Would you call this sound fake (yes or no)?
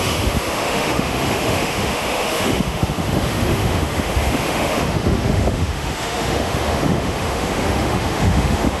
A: yes